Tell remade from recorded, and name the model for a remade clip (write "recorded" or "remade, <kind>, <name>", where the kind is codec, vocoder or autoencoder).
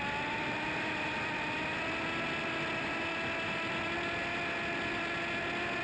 recorded